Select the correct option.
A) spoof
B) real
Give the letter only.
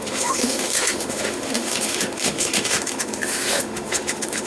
A